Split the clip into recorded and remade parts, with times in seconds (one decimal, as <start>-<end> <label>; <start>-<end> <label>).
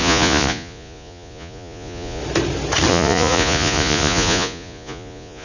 0.0-2.2 remade; 2.2-2.9 recorded; 2.9-5.4 remade